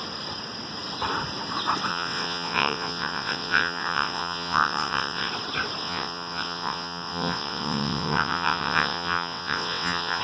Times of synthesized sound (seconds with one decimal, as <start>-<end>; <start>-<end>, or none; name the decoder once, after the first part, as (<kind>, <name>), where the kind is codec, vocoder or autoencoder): 1.9-5.3 (vocoder, WaveNeXt); 5.8-10.2